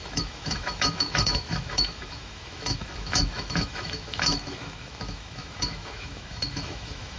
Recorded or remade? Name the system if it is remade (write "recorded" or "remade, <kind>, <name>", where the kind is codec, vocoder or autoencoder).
remade, autoencoder, DAC-VAE